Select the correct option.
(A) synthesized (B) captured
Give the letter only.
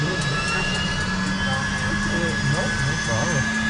B